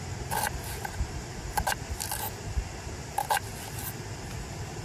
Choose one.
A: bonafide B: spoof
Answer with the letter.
A